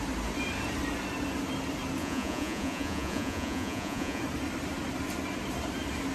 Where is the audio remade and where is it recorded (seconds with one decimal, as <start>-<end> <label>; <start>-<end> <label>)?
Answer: 0.0-2.0 recorded; 2.0-4.2 remade; 4.2-6.1 recorded